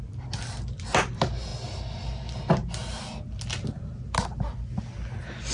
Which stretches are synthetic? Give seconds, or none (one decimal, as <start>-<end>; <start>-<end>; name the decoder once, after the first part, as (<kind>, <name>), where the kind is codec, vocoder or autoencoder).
none